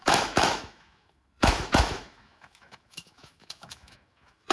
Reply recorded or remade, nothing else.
remade